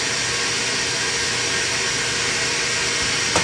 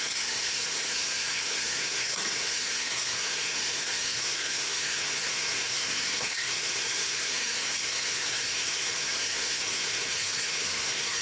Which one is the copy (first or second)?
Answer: second